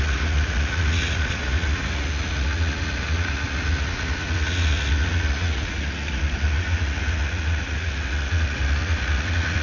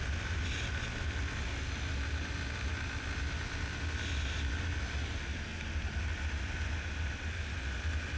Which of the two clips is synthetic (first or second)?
first